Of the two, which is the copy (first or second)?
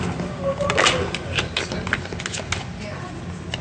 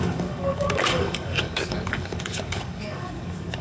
second